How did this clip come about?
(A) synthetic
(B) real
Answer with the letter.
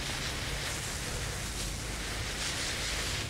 B